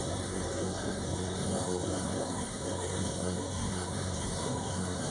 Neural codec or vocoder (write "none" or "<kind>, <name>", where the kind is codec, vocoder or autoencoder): codec, SNAC